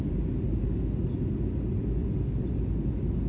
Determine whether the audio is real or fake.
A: real